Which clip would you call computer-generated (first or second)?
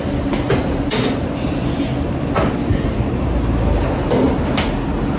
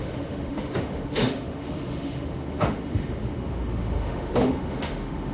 second